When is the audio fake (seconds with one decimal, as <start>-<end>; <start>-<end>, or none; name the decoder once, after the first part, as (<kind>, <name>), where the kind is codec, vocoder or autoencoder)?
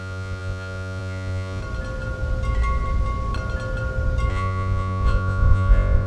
0.0-1.6 (vocoder, Vocos); 4.3-6.1